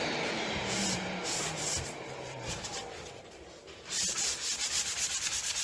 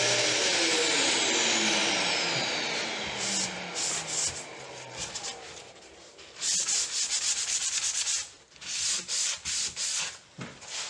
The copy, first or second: first